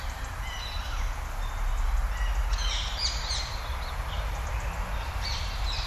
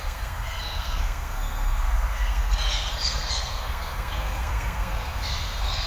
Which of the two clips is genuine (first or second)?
first